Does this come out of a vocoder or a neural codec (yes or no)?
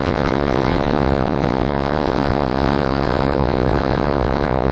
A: yes